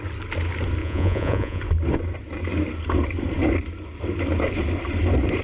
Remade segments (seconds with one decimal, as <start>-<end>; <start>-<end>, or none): 0.8-1.6